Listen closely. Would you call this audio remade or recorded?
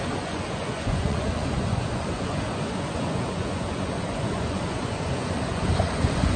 remade